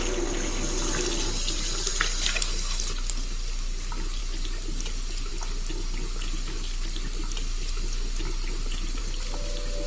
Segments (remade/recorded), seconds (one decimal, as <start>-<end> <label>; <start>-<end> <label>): 0.0-9.9 recorded